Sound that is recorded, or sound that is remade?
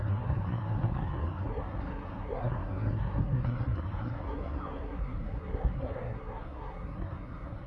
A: remade